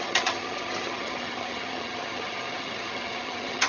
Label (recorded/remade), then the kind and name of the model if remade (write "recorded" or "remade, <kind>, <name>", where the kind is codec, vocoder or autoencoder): remade, vocoder, HiFi-GAN